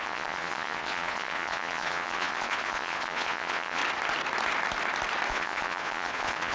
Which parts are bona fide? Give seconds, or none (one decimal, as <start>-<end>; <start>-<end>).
3.8-5.3